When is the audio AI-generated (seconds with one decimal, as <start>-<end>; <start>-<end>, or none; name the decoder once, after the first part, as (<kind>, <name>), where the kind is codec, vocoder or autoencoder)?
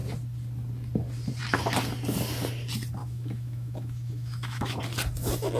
3.0-4.8 (autoencoder, DAC-VAE)